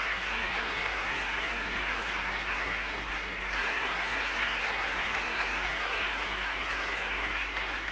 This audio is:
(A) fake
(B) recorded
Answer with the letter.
A